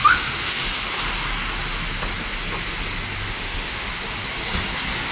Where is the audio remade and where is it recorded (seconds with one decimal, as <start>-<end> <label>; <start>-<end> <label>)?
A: 0.0-0.6 remade; 0.6-3.3 recorded; 3.3-3.9 remade; 3.9-5.1 recorded